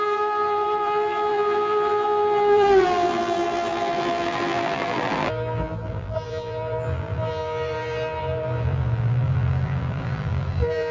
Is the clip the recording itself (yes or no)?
no